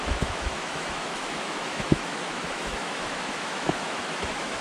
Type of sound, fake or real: fake